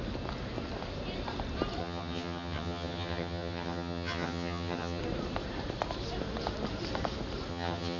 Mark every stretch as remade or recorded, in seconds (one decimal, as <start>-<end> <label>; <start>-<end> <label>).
0.0-1.8 recorded; 1.8-5.0 remade; 5.0-7.5 recorded; 7.5-8.0 remade